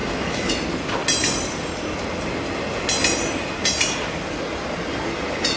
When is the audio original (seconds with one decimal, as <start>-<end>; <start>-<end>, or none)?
0.5-5.6